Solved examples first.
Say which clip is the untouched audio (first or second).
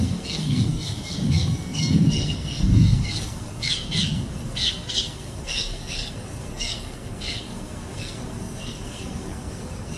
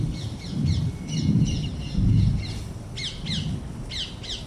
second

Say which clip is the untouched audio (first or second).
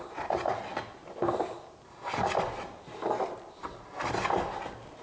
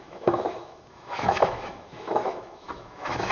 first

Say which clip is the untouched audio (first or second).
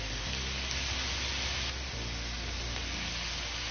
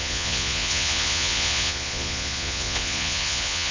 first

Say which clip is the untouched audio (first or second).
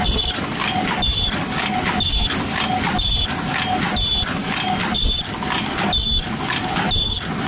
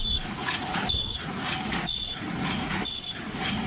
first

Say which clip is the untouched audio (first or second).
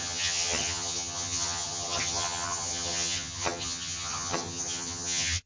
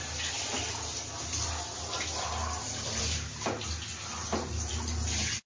second